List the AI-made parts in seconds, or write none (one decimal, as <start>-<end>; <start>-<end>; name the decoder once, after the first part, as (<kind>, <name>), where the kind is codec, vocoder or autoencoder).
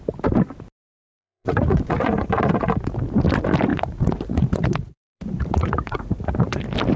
0.8-2.5 (vocoder, Vocos); 3.7-6.6